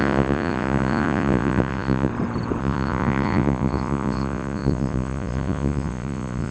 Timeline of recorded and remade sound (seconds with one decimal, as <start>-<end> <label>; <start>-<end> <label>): 0.0-2.1 remade; 2.1-2.6 recorded; 2.6-6.5 remade